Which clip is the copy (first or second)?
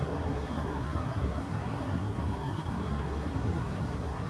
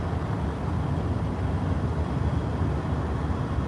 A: first